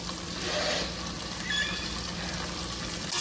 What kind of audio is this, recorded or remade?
recorded